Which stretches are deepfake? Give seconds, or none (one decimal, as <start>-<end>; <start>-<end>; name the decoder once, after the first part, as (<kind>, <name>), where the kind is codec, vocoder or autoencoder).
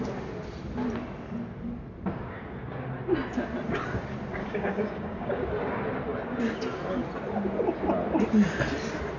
4.4-5.4 (codec, DAC)